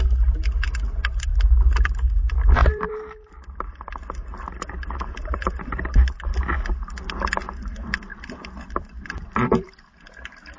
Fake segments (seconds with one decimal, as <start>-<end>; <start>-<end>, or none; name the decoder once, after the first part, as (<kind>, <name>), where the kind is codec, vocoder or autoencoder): 2.6-3.3 (vocoder, BigVGAN v2); 8.1-9.7